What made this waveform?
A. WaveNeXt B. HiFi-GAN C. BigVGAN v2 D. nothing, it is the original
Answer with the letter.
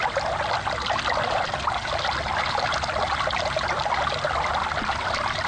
D